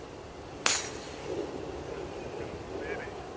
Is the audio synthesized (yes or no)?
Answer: no